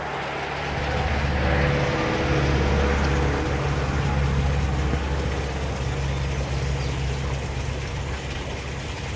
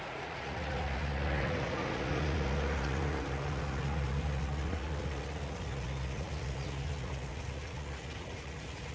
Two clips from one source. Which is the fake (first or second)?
second